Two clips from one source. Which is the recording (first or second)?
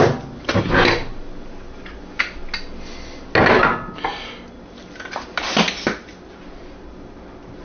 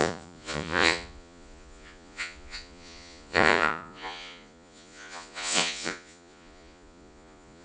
first